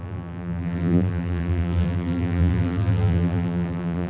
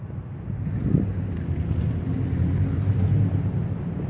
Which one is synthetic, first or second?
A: first